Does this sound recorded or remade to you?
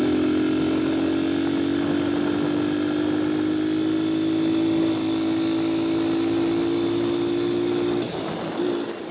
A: recorded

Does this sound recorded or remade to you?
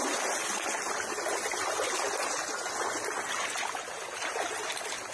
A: recorded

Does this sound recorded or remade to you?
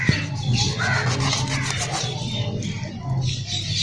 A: recorded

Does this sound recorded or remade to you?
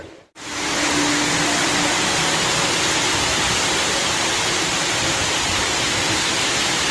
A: recorded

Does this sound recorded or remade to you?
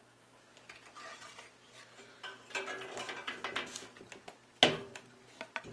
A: recorded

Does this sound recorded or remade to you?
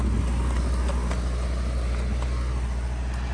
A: recorded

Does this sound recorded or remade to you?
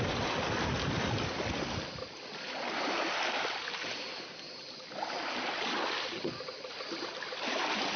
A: recorded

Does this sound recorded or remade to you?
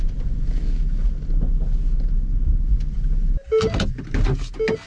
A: recorded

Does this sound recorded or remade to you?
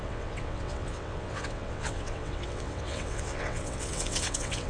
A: remade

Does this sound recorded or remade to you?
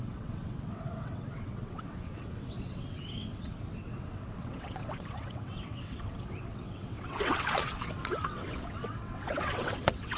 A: remade